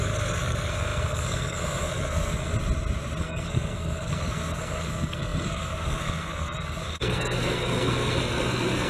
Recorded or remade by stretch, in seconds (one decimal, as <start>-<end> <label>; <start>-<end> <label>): 0.0-2.5 remade; 2.5-3.2 recorded; 3.2-8.9 remade